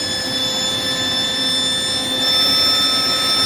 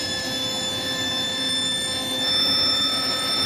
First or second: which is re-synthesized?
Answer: second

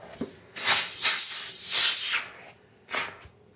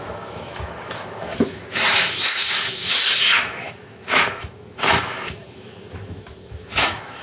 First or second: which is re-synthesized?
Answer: second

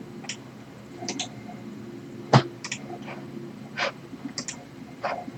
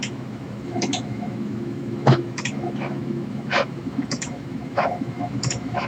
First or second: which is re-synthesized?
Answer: second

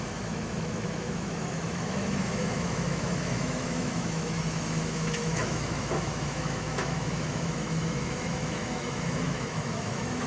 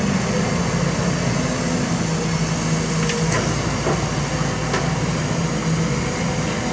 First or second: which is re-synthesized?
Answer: first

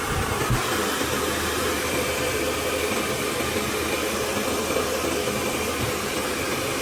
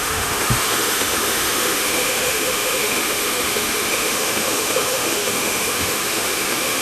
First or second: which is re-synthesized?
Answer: second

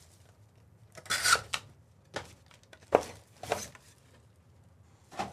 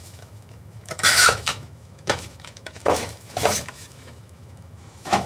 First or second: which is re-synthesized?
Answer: second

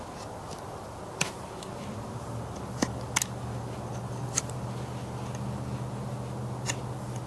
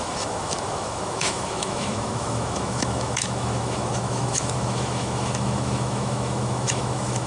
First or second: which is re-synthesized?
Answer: second